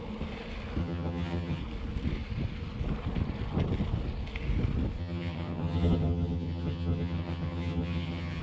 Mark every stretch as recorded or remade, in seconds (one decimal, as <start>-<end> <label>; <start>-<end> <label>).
0.0-0.8 recorded; 0.8-1.6 remade; 1.6-5.0 recorded; 5.0-8.4 remade